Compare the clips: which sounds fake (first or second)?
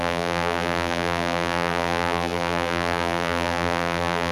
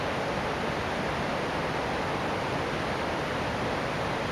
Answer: first